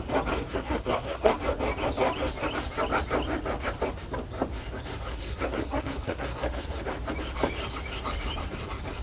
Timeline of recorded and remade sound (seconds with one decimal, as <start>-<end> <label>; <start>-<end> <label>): 0.0-0.5 recorded; 0.5-1.3 remade; 1.3-5.1 recorded; 5.1-6.8 remade; 6.8-9.0 recorded